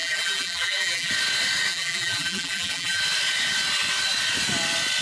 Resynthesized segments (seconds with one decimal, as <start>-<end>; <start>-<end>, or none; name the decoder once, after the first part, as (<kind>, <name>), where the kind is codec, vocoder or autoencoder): 0.0-1.1 (vocoder, BigVGAN v2); 1.7-3.0